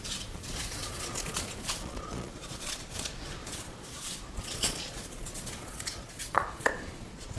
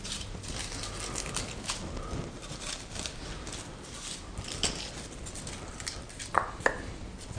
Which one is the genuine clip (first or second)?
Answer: second